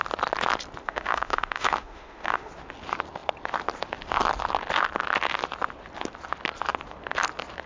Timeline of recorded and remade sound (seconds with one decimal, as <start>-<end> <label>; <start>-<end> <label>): 0.0-0.8 recorded; 0.8-2.5 remade; 2.5-7.7 recorded